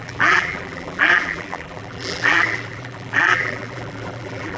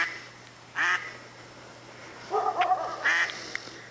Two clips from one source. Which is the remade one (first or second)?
first